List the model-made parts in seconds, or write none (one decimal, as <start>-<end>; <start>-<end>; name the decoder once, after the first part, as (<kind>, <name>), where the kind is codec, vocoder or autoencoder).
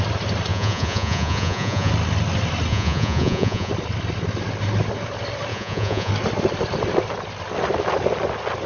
0.5-1.9 (vocoder, Vocos); 2.7-3.7; 5.5-6.1